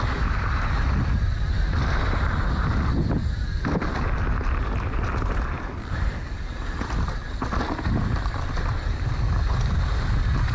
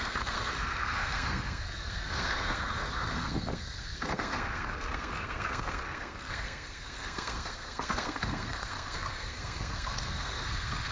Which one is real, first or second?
first